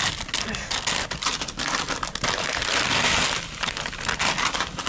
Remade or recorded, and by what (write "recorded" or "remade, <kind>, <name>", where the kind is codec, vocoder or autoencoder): recorded